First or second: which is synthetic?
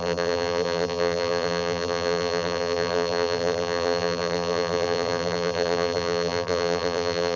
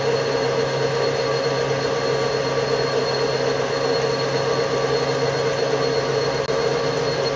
first